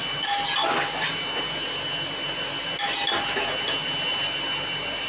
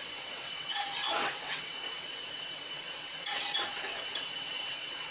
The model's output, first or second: second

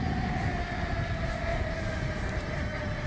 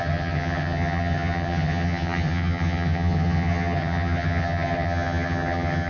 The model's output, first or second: second